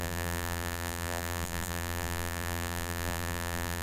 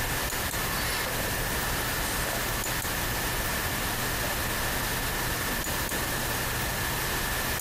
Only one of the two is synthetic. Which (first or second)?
first